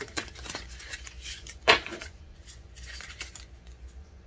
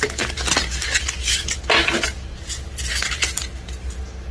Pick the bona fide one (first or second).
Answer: second